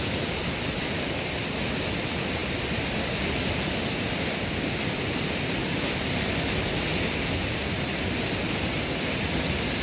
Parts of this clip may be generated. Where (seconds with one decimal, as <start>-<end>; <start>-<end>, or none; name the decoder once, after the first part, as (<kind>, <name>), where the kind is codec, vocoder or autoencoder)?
none